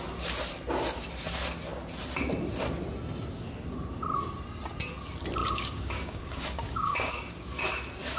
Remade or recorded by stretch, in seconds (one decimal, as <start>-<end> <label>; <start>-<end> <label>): 0.0-5.4 recorded; 5.4-7.6 remade; 7.6-8.2 recorded